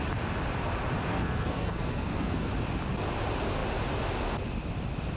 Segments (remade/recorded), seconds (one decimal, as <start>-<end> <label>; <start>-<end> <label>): 0.0-1.1 recorded; 1.1-2.5 remade; 2.5-5.2 recorded